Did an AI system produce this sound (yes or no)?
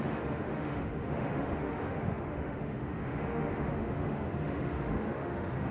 yes